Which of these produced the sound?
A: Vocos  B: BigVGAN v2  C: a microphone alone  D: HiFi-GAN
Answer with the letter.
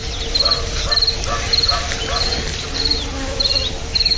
C